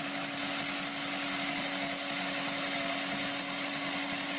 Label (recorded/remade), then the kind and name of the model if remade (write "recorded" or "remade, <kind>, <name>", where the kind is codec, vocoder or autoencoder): recorded